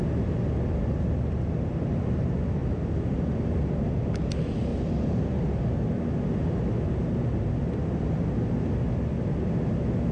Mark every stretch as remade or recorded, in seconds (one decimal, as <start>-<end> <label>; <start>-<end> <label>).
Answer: 0.0-2.6 recorded; 2.6-4.3 remade; 4.3-4.7 recorded; 4.7-5.2 remade; 5.2-10.1 recorded